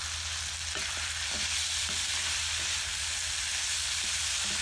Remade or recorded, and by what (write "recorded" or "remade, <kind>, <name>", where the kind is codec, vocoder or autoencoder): recorded